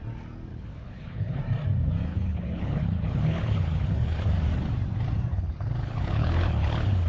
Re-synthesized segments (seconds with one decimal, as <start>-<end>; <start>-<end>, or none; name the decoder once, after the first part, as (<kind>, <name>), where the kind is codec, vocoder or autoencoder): 0.5-1.4 (codec, HILCodec); 2.1-4.3; 5.3-7.1